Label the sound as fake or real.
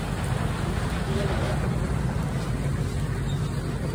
real